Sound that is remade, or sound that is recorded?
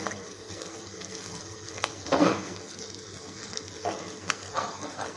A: remade